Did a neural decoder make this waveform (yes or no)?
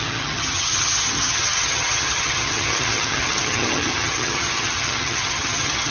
yes